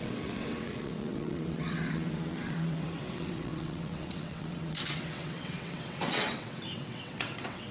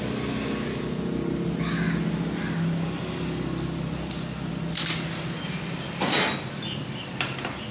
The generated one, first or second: first